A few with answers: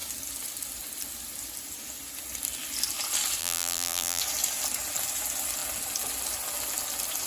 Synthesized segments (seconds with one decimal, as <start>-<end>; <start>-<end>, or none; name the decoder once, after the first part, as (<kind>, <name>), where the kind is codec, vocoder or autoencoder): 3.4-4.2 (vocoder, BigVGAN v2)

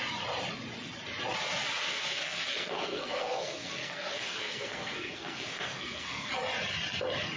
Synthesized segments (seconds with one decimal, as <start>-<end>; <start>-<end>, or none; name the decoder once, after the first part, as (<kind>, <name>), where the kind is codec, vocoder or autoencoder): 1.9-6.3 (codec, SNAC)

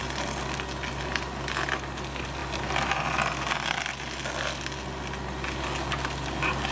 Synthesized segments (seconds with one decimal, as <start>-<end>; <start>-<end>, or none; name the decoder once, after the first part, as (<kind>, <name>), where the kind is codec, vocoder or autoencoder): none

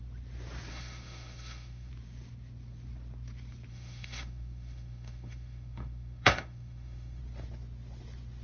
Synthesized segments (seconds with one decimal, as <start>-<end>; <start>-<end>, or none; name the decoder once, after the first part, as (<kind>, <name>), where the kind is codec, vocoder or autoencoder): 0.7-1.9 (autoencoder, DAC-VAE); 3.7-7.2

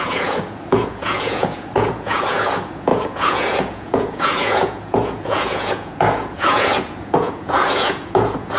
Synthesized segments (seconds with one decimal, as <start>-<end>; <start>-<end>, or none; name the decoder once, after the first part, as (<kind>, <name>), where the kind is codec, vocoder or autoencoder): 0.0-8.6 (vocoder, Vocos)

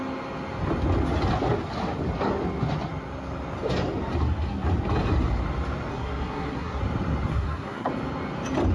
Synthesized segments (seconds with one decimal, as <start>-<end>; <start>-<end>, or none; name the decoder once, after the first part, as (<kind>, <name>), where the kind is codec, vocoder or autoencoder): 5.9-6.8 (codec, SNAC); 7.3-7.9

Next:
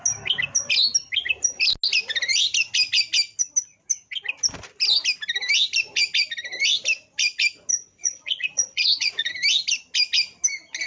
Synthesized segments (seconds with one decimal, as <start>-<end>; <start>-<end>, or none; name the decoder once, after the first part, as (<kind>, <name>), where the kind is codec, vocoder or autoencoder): 7.7-9.3 (vocoder, Vocos)

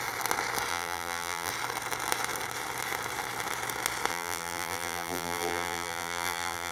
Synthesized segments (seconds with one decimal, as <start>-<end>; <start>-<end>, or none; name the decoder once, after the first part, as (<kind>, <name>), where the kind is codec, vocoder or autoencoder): 0.7-1.5 (vocoder, BigVGAN v2); 4.1-6.7